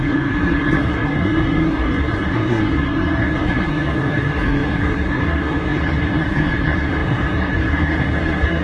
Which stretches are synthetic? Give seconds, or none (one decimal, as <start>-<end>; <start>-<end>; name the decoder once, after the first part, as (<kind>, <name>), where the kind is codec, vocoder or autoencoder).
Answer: 0.0-8.6 (codec, SNAC)